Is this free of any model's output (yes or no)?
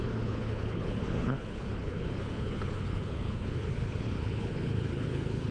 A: no